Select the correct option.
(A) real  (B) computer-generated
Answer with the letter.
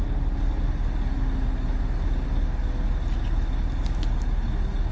A